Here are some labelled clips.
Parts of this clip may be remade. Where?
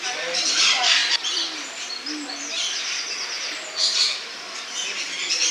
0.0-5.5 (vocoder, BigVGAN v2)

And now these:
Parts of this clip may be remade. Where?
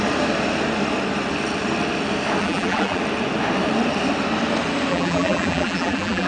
2.4-3.0 (vocoder, BigVGAN v2); 4.9-6.3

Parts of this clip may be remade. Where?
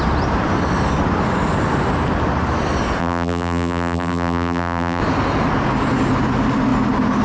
3.0-5.0 (vocoder, BigVGAN v2)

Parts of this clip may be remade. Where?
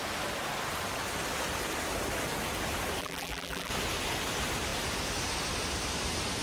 3.0-3.7 (vocoder, BigVGAN v2)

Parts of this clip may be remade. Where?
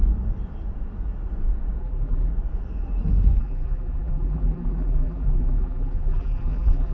1.8-2.3 (vocoder, BigVGAN v2); 3.4-6.9